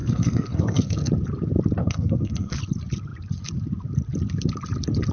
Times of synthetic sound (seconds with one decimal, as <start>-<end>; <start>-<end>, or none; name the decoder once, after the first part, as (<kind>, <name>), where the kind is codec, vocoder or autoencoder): 0.0-1.1 (codec, SNAC); 1.8-2.6